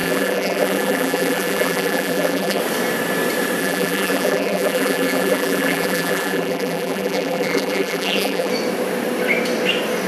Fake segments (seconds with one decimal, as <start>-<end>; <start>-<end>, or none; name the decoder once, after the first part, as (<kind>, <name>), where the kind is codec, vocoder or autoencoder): 0.0-2.6 (vocoder, BigVGAN v2); 3.6-8.5